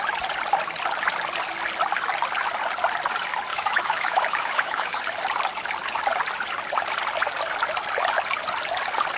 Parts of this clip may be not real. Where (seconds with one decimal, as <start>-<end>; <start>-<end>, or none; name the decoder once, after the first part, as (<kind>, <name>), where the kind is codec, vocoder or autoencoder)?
3.5-5.0 (autoencoder, DAC-VAE)